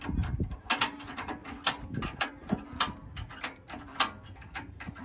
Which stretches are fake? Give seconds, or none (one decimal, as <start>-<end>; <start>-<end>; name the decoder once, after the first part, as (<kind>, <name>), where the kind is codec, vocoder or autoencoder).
none

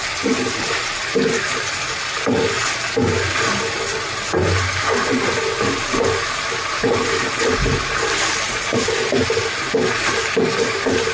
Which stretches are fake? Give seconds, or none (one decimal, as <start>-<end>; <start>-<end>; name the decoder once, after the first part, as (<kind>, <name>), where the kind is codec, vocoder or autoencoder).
none

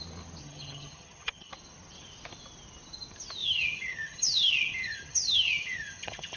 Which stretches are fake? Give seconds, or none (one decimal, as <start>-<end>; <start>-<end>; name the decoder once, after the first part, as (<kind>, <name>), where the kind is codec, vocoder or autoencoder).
0.4-1.5 (vocoder, HiFi-GAN); 3.4-6.4